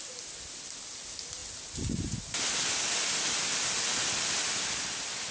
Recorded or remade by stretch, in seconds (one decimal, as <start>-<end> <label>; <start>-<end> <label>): 0.0-5.3 recorded